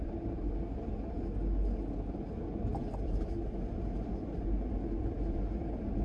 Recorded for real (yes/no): yes